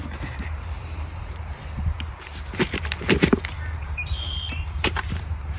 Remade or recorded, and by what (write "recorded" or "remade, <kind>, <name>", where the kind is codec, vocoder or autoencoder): remade, vocoder, BigVGAN v2